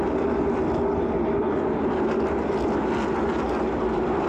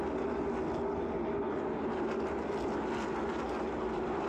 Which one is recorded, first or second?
second